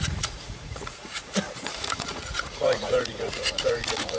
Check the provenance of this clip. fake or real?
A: fake